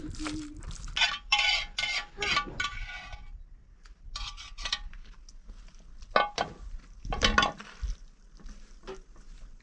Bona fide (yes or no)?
yes